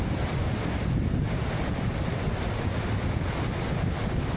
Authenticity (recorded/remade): recorded